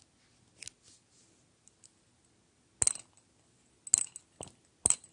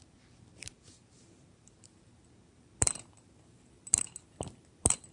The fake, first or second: second